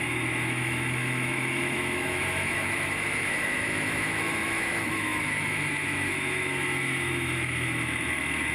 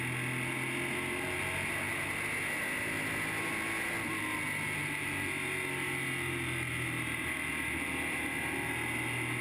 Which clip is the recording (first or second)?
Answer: second